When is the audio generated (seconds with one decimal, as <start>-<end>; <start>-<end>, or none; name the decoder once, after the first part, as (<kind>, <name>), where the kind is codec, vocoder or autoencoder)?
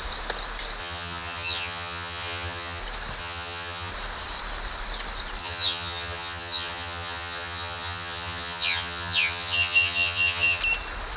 0.8-2.8 (vocoder, HiFi-GAN); 3.2-3.9; 5.4-10.6